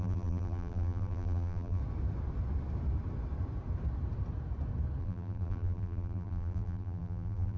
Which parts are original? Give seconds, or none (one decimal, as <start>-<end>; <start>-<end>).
1.8-5.0